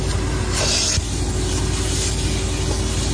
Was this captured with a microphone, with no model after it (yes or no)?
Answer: yes